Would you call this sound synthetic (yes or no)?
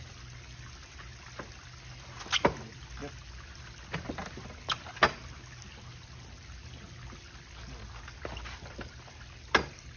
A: no